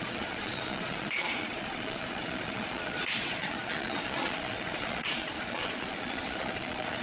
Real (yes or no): no